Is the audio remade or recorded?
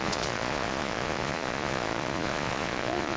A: remade